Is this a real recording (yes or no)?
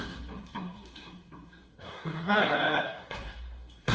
no